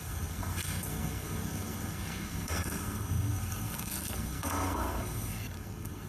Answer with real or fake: fake